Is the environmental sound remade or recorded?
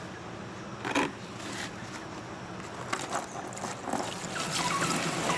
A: recorded